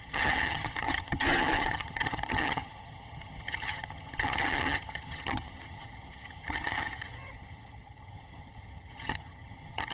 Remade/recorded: remade